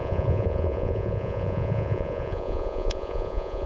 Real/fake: fake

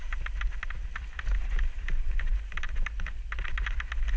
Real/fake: real